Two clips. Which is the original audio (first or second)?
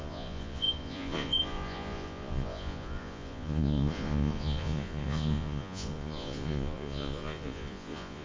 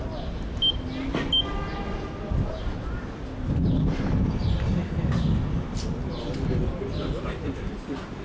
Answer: second